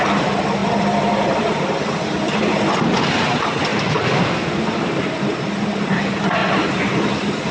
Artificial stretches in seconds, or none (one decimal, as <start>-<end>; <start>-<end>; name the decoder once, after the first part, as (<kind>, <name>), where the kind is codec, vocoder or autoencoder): 0.6-2.3 (vocoder, BigVGAN v2); 3.7-5.0; 6.4-7.5